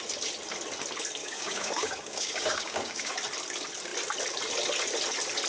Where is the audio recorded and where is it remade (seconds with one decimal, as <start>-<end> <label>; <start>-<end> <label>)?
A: 0.0-1.2 recorded; 1.2-3.1 remade; 3.1-5.5 recorded